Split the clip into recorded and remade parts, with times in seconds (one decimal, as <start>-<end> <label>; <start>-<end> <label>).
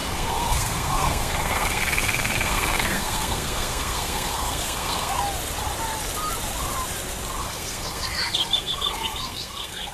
0.0-5.1 remade; 5.1-7.4 recorded; 7.4-9.9 remade